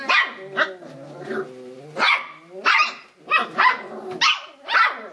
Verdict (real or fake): real